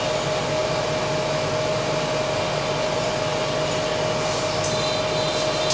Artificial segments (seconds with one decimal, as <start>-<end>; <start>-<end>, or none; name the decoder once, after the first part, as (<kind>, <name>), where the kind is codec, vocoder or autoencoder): none

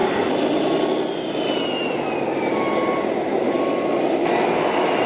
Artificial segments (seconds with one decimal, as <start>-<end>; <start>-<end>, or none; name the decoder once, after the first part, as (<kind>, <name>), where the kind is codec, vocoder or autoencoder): none

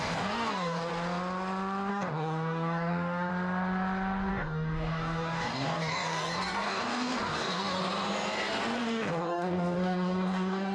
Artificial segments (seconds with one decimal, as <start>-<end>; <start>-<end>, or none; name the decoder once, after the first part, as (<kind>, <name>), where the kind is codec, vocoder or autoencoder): 0.0-0.9 (codec, DAC); 1.9-3.3; 4.3-7.8; 8.8-10.7

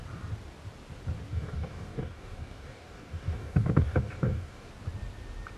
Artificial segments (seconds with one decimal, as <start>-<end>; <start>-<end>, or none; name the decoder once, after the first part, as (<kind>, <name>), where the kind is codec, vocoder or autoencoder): 1.3-4.7 (codec, DAC)

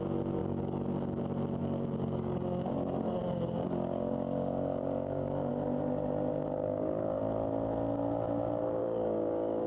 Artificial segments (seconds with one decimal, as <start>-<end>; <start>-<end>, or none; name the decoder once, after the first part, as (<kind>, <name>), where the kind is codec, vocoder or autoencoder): 0.4-1.2 (codec, DAC); 1.6-5.5; 6.3-7.2; 8.8-9.7